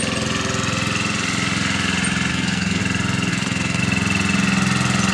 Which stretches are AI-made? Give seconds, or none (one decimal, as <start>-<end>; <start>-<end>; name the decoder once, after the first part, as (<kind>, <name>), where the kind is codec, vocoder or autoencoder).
2.3-2.8 (codec, SNAC); 3.3-3.8